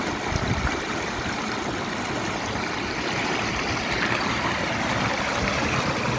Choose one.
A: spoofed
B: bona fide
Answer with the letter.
B